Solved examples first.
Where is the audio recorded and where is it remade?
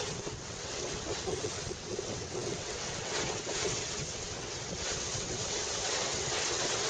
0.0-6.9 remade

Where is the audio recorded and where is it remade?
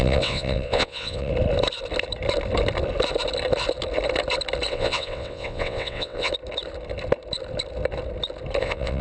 0.0-1.3 remade; 1.3-4.7 recorded; 4.7-6.3 remade; 6.3-8.6 recorded; 8.6-9.0 remade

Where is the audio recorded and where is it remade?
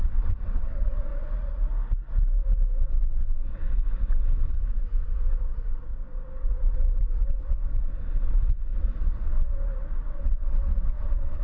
0.0-1.1 remade; 1.1-2.8 recorded; 2.8-11.4 remade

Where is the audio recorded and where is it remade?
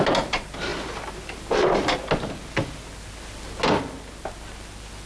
0.0-5.1 recorded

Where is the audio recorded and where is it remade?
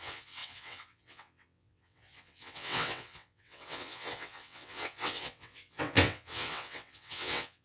0.0-7.6 remade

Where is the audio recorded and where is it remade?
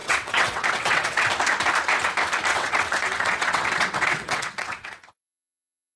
0.0-1.3 remade; 1.3-2.5 recorded; 2.5-6.0 remade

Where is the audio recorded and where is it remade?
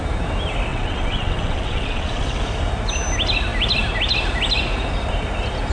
0.0-0.7 recorded; 0.7-2.4 remade; 2.4-5.7 recorded